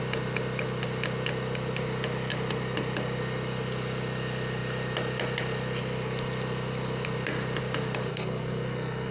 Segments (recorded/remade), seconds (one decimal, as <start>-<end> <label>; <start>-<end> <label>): 0.0-8.1 recorded; 8.1-9.1 remade